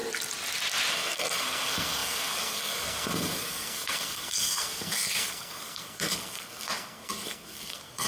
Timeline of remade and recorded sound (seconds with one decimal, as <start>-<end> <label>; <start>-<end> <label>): 0.0-0.9 recorded; 0.9-8.1 remade